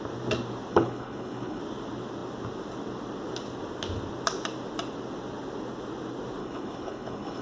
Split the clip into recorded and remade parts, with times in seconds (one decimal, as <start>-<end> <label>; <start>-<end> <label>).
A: 0.0-0.7 recorded; 0.7-1.6 remade; 1.6-6.4 recorded; 6.4-7.4 remade